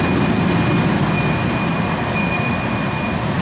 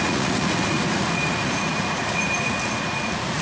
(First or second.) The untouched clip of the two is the first